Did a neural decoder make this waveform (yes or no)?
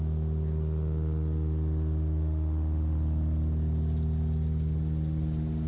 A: no